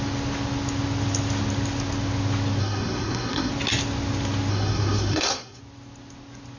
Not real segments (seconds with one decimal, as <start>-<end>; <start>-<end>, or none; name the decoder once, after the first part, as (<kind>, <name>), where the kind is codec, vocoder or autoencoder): 2.6-3.5 (codec, SNAC); 4.5-5.6